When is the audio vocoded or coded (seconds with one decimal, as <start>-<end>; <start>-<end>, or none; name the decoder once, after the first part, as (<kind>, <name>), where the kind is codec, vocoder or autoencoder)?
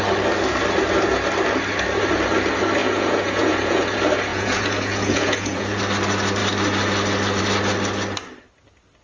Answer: 2.8-3.8 (vocoder, Vocos); 4.3-5.8